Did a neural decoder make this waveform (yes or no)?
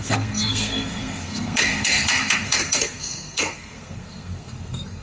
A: yes